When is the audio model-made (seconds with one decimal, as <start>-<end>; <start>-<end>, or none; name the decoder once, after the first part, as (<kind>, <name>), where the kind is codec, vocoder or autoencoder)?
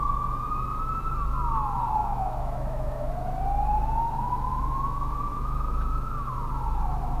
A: 2.0-3.1 (autoencoder, DAC-VAE); 4.5-6.3